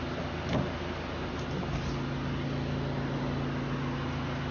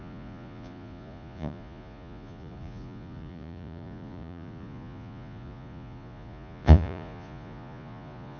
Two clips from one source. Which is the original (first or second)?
first